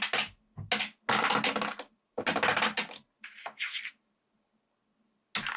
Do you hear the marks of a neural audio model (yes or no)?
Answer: no